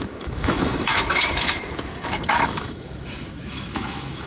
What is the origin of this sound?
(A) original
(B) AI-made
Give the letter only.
B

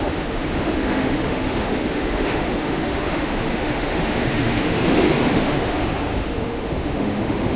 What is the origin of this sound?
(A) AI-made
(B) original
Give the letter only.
A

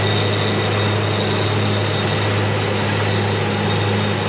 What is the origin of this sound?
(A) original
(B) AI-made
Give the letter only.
A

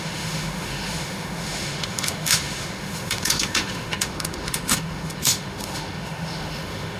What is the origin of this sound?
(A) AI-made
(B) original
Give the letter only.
A